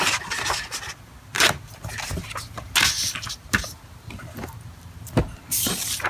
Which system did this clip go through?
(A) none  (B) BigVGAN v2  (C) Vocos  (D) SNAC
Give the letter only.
A